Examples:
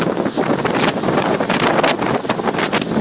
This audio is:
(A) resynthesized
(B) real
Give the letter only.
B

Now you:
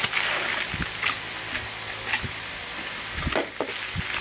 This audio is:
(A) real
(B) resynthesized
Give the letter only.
A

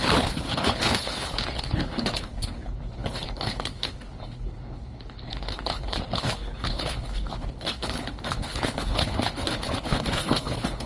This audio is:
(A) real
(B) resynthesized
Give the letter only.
B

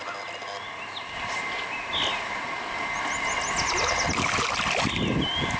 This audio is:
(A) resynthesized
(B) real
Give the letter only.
B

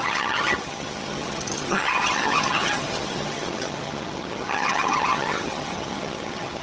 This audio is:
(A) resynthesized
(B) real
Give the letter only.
A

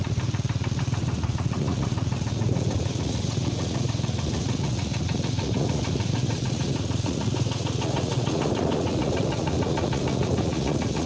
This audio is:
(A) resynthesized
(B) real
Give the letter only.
A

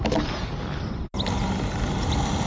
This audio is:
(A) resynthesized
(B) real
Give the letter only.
B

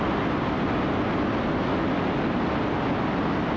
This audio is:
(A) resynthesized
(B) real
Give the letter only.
B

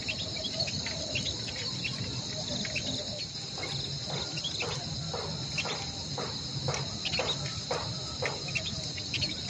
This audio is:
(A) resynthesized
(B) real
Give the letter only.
B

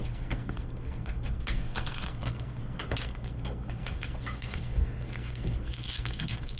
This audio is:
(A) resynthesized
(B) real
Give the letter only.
A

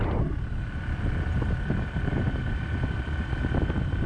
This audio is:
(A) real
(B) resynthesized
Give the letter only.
A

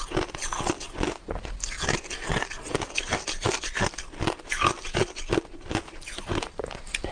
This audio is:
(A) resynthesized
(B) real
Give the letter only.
B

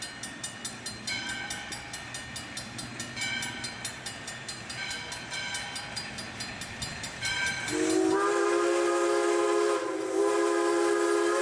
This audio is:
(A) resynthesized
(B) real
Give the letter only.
B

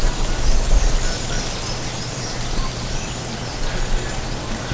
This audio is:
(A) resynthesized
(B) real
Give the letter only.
B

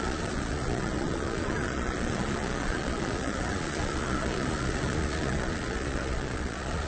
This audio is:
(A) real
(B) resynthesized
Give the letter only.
B